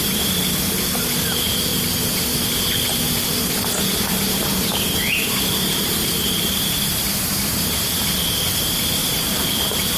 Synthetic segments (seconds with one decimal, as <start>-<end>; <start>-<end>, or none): 0.0-10.0